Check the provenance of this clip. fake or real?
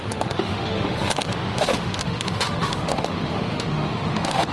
fake